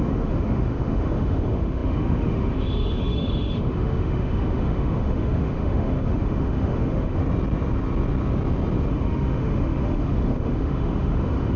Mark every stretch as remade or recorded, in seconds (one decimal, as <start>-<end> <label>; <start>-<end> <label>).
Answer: 0.0-7.2 remade; 7.2-8.9 recorded; 8.9-11.6 remade